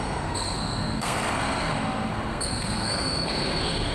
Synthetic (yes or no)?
yes